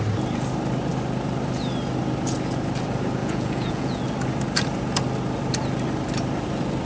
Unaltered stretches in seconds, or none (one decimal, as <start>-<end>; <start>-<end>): 0.0-3.2; 4.0-6.9